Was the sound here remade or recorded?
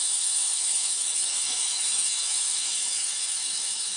remade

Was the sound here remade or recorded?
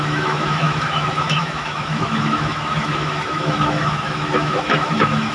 remade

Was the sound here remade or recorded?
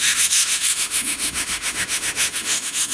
remade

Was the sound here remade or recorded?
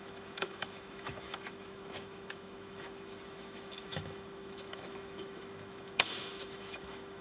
remade